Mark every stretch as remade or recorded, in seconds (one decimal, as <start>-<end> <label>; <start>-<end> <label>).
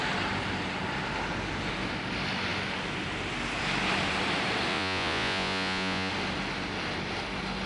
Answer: 0.0-4.7 recorded; 4.7-6.1 remade; 6.1-7.7 recorded